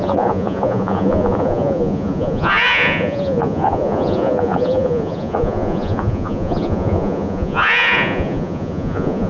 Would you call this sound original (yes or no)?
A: no